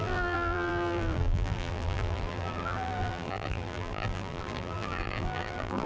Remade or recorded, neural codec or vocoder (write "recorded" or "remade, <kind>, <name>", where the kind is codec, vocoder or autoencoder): remade, vocoder, BigVGAN v2